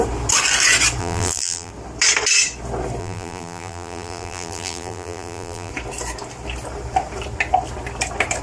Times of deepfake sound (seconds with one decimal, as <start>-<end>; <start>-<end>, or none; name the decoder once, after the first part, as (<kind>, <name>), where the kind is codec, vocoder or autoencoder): 1.0-1.7 (vocoder, BigVGAN v2); 3.0-5.7

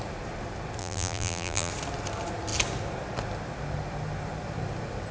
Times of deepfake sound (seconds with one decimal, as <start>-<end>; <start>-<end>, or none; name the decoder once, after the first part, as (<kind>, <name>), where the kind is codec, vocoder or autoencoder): 0.8-1.7 (vocoder, BigVGAN v2)